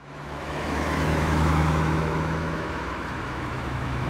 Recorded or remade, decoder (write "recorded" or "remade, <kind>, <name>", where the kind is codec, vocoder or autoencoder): remade, autoencoder, DAC-VAE